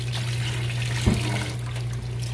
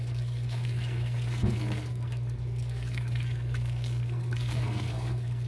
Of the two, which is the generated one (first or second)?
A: second